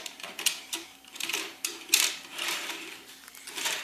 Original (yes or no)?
no